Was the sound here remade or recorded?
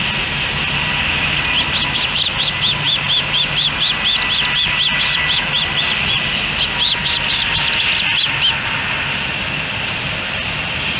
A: recorded